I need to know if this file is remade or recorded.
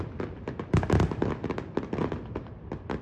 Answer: recorded